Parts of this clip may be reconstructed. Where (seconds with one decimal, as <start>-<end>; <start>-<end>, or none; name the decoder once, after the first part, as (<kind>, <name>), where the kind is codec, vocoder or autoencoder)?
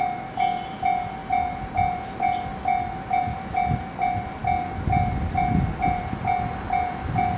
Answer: none